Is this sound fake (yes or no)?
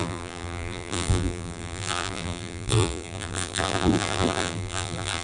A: yes